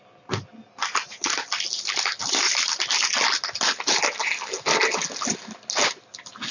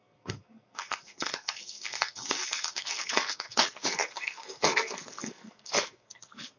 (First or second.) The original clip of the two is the first